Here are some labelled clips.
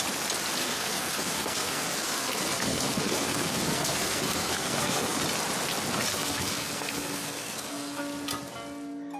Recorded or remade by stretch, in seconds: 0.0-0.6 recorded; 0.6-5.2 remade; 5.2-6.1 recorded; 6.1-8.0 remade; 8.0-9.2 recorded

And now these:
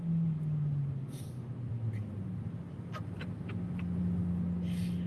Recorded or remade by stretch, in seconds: 0.0-5.1 recorded

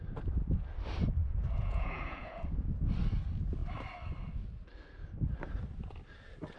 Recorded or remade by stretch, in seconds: 0.0-1.2 recorded; 1.2-2.9 remade; 2.9-6.6 recorded

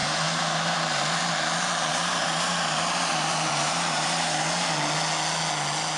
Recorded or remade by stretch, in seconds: 0.0-1.3 remade; 1.3-1.9 recorded; 1.9-4.7 remade; 4.7-6.0 recorded

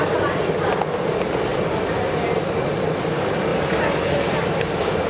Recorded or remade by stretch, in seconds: 0.0-1.5 recorded; 1.5-2.8 remade; 2.8-3.5 recorded; 3.5-4.1 remade; 4.1-5.1 recorded

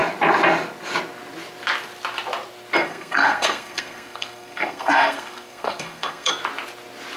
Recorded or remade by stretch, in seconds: 0.0-2.8 recorded; 2.8-6.3 remade; 6.3-7.2 recorded